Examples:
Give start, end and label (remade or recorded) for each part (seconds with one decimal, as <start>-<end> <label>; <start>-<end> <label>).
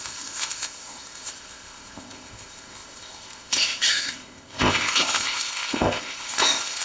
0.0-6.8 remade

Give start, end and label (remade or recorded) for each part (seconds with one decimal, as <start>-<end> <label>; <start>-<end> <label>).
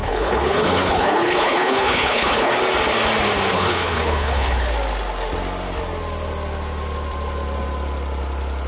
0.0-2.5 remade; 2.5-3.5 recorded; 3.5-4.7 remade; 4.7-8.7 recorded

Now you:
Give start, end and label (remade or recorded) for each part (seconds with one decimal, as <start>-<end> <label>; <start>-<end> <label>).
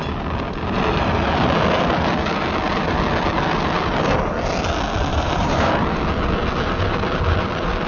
0.0-5.1 recorded; 5.1-5.7 remade; 5.7-7.9 recorded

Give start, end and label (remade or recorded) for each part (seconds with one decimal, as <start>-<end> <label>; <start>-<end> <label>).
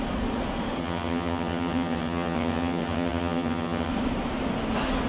0.0-0.8 recorded; 0.8-3.9 remade; 3.9-5.1 recorded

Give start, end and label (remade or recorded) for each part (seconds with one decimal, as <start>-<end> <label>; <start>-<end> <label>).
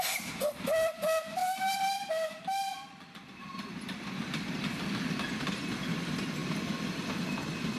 0.0-7.8 recorded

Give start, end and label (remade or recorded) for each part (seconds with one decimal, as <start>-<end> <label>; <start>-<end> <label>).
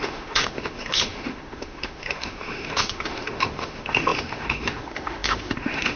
0.0-6.0 remade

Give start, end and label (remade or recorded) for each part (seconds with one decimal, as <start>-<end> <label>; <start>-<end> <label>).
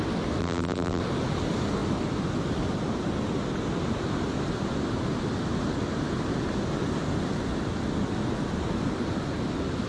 0.0-0.4 recorded; 0.4-1.0 remade; 1.0-9.9 recorded